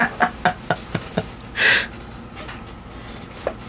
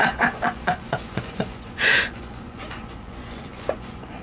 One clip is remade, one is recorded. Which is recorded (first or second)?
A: first